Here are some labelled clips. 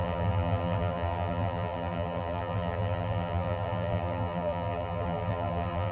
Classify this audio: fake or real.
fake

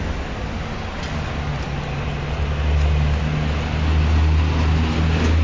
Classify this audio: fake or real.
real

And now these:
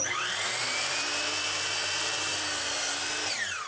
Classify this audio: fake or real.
real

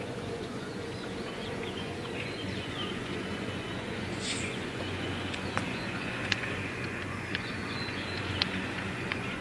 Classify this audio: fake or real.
fake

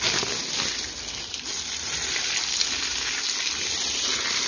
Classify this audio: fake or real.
real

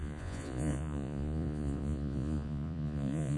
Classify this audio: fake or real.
fake